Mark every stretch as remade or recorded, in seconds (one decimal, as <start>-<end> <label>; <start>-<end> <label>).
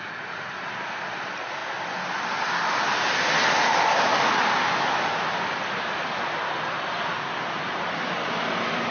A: 0.0-8.9 recorded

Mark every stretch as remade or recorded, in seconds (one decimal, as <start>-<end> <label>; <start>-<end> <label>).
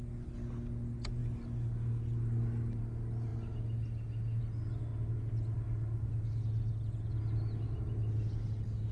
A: 0.0-8.9 recorded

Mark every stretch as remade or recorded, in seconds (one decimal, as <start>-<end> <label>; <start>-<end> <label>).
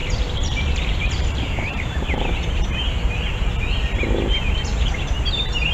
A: 0.0-2.9 remade; 2.9-4.7 recorded; 4.7-5.3 remade; 5.3-5.7 recorded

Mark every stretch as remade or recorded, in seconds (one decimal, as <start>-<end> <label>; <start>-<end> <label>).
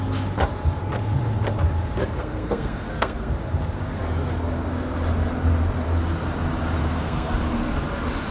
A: 0.0-2.0 recorded; 2.0-3.3 remade; 3.3-6.8 recorded; 6.8-7.3 remade; 7.3-8.3 recorded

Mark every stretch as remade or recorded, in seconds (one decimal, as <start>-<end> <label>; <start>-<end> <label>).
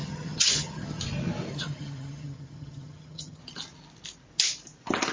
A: 0.0-1.0 remade; 1.0-1.5 recorded; 1.5-3.4 remade; 3.4-5.1 recorded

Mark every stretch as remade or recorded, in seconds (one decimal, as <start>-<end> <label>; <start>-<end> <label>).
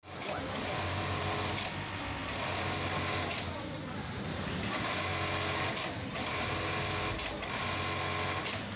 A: 0.0-8.8 recorded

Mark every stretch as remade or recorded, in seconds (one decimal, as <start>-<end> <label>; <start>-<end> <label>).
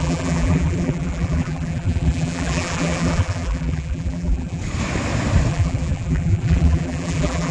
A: 0.0-4.6 remade; 4.6-5.5 recorded; 5.5-7.5 remade